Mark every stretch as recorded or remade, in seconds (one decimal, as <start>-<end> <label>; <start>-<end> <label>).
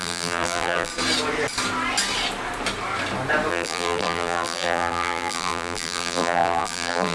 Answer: 0.0-0.9 remade; 0.9-3.5 recorded; 3.5-7.1 remade